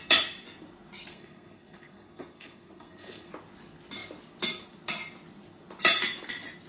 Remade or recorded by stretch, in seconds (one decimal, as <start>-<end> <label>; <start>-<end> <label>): 0.0-1.1 recorded; 1.1-3.3 remade; 3.3-6.7 recorded